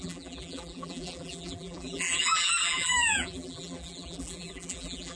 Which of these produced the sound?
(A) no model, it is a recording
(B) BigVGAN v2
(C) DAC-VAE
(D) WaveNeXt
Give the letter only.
B